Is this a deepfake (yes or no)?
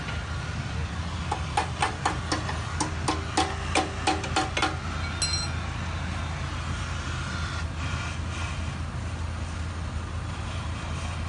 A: no